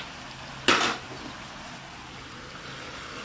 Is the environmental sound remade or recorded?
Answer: recorded